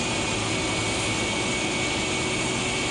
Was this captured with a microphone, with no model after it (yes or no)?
yes